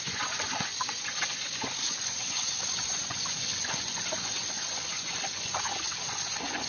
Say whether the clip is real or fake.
fake